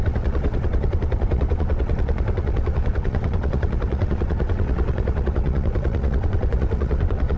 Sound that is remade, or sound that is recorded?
remade